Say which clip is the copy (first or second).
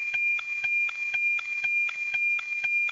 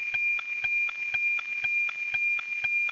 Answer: first